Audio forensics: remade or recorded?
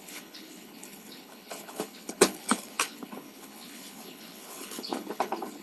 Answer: remade